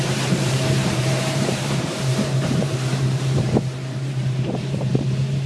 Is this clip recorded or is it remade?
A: remade